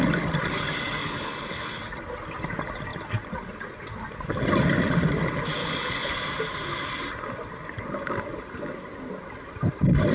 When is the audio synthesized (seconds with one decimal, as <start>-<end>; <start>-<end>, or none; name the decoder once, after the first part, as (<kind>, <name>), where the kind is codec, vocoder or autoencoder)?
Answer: 1.0-1.8 (codec, HILCodec); 5.6-6.1